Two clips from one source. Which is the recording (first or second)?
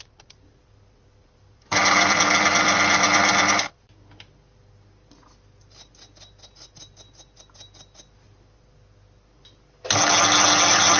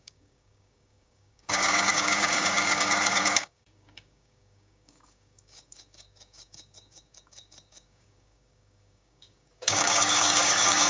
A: first